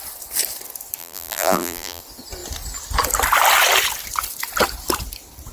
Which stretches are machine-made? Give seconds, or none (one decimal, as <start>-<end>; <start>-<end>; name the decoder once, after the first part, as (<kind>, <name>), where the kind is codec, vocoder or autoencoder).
1.0-2.0 (vocoder, BigVGAN v2)